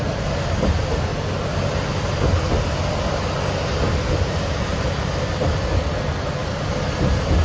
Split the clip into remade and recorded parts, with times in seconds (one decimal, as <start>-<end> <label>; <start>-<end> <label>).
0.0-4.7 recorded; 4.7-5.9 remade; 5.9-7.4 recorded